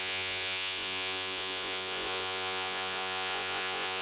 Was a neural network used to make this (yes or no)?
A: yes